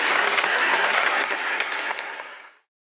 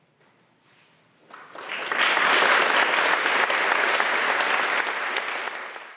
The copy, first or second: first